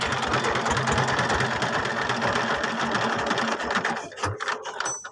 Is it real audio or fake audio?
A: real